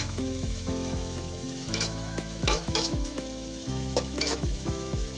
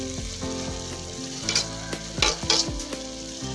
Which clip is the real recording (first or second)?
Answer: second